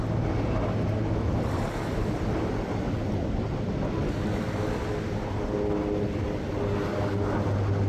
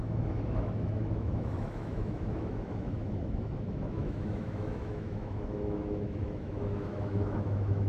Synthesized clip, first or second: second